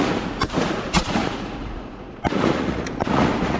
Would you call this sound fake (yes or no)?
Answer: yes